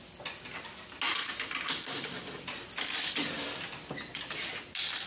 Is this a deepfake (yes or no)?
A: no